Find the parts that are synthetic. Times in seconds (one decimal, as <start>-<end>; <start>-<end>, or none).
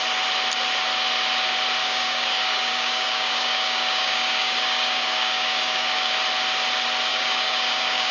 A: 1.8-6.1; 7.1-8.1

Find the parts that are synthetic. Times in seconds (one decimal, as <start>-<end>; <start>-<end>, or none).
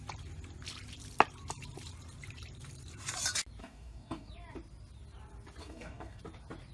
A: 3.6-4.3; 5.6-6.2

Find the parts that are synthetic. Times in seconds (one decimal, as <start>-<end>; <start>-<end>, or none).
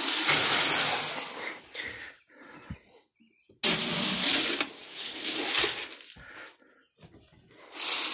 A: none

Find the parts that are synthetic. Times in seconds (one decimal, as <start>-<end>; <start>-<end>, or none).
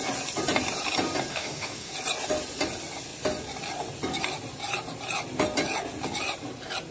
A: 1.3-1.9